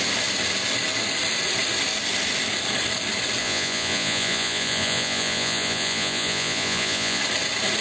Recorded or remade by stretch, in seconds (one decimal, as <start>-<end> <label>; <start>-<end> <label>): 0.0-3.4 recorded; 3.4-7.2 remade; 7.2-7.8 recorded